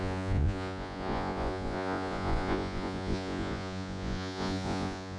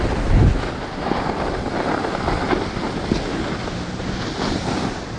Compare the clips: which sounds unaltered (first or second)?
second